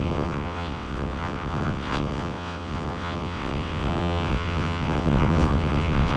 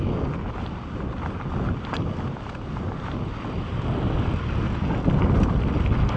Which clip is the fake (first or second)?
first